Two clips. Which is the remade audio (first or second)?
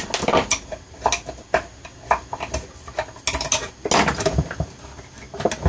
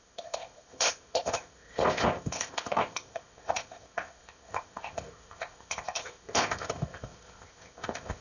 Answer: second